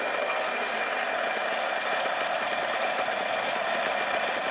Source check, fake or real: real